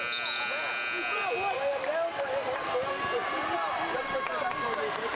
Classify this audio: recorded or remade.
recorded